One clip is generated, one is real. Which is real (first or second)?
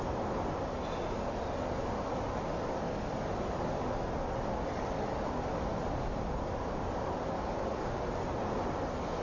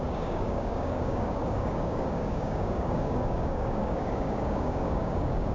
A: first